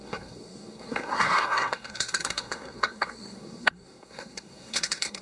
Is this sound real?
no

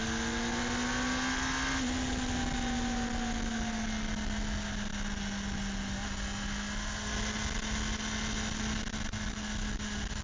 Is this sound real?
yes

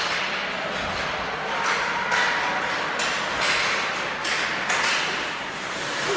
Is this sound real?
yes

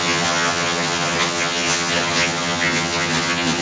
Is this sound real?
no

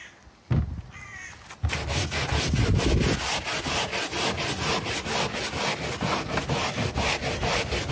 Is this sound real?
yes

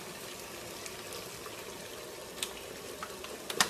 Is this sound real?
yes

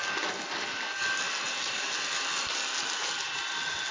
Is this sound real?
yes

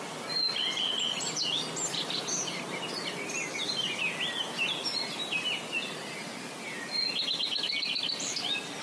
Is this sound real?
yes